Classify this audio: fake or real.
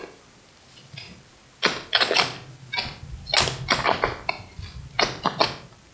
real